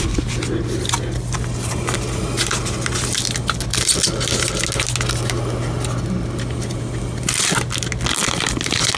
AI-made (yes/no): no